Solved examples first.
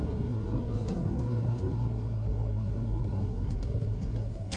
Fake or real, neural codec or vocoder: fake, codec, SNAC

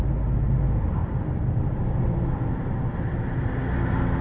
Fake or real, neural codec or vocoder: real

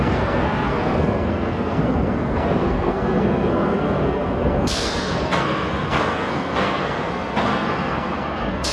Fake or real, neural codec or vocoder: fake, codec, SNAC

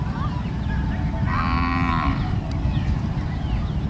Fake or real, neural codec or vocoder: real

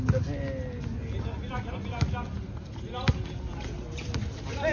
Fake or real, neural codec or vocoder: real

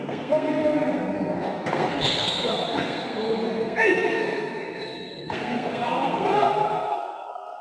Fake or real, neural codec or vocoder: fake, codec, SNAC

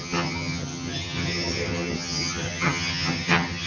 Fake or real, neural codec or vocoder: fake, vocoder, HiFi-GAN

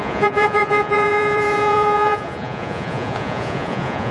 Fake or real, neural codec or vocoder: fake, vocoder, Vocos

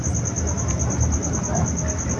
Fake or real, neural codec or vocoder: real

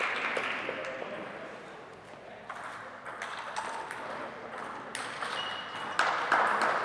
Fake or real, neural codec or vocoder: real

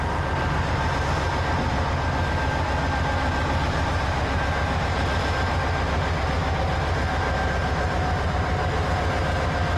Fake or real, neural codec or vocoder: real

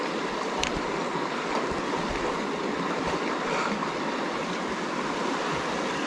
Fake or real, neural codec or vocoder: real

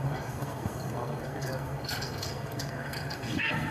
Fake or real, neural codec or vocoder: fake, codec, SNAC